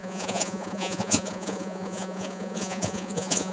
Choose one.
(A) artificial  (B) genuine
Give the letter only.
A